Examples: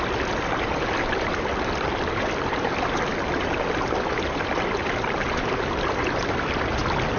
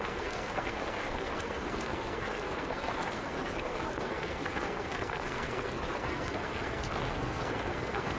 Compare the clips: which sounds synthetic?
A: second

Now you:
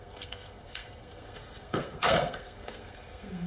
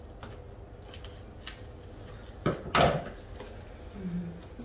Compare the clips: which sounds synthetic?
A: first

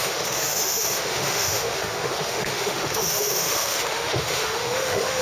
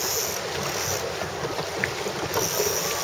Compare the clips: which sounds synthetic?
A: first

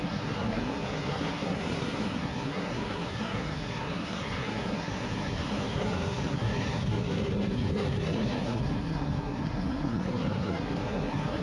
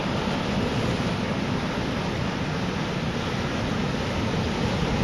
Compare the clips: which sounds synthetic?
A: first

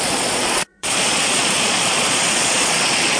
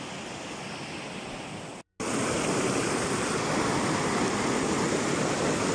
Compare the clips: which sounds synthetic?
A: first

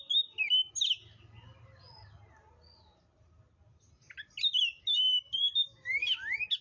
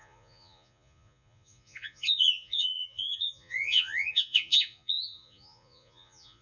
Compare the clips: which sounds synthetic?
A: second